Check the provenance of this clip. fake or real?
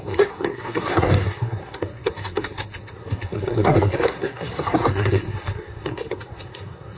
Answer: fake